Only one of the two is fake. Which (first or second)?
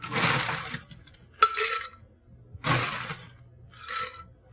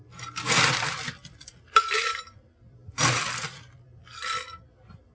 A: second